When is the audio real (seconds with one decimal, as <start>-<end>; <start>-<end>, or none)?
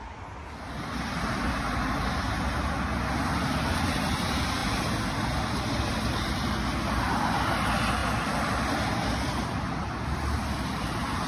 0.0-8.0; 10.9-11.3